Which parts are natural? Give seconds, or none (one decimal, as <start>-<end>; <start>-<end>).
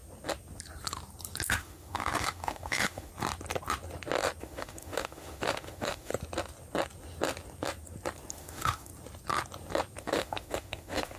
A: 0.0-1.5; 3.1-4.4; 6.1-8.3; 8.9-10.0